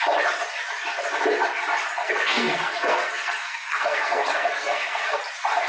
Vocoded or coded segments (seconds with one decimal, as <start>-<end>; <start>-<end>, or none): 2.0-5.2